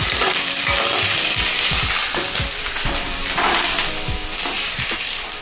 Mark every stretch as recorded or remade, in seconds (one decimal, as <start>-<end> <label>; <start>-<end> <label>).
0.0-3.2 remade; 3.2-4.2 recorded; 4.2-5.4 remade